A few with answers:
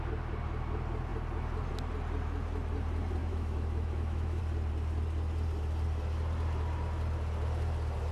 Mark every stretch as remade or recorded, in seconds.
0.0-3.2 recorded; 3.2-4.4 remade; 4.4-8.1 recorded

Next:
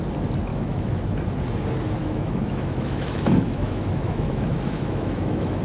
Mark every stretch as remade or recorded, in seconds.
0.0-0.5 recorded; 0.5-1.0 remade; 1.0-2.0 recorded; 2.0-5.6 remade

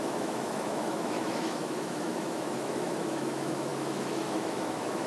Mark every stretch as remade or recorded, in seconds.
0.0-5.1 remade

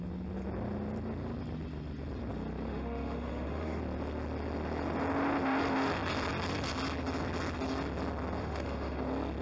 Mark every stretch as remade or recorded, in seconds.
0.0-2.7 recorded; 2.7-3.8 remade; 3.8-8.4 recorded; 8.4-9.0 remade; 9.0-9.4 recorded